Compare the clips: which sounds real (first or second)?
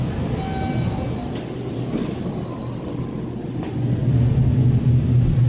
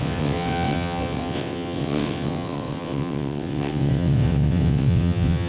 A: first